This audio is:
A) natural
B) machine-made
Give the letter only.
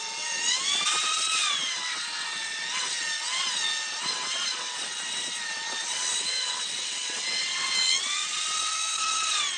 B